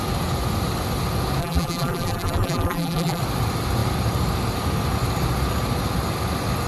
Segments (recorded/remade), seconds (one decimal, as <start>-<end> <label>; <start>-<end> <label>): 0.0-1.4 recorded; 1.4-3.2 remade; 3.2-6.7 recorded